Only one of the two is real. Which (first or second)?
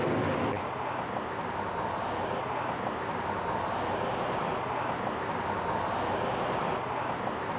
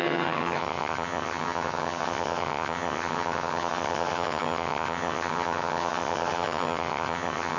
first